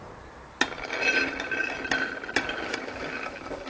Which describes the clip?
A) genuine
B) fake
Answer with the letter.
A